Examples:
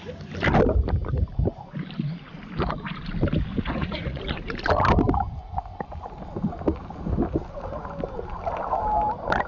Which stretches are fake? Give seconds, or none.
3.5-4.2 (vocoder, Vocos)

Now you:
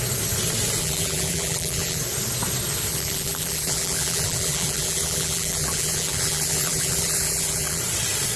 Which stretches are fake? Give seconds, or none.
0.8-2.0 (vocoder, BigVGAN v2); 2.9-7.8